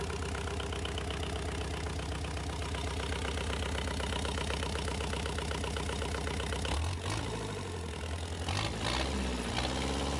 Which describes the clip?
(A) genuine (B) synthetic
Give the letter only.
A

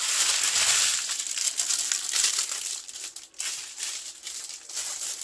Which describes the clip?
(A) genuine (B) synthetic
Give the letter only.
A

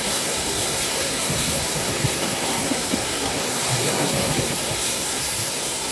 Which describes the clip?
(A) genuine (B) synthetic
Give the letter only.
B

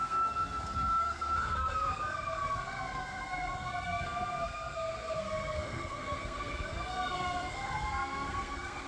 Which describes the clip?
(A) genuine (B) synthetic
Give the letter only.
B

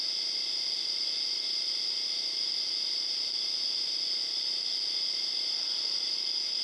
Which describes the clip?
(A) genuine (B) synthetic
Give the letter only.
A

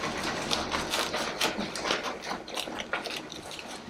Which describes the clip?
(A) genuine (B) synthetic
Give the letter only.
A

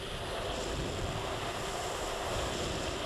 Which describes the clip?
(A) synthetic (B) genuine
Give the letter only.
B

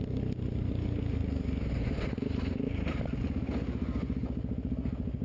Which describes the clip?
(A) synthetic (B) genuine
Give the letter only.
B